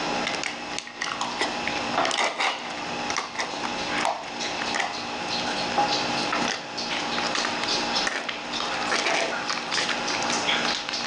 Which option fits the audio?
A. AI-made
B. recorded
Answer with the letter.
B